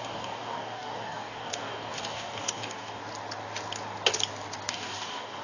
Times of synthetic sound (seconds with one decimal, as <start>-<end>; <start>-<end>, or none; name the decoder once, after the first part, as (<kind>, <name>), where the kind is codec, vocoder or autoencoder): 0.0-3.0 (codec, DAC); 4.7-5.4